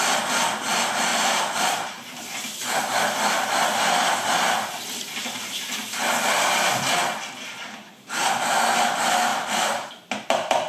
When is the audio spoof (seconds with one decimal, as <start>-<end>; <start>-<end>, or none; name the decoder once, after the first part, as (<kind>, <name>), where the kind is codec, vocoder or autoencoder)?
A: 1.1-2.2 (vocoder, BigVGAN v2); 9.3-9.9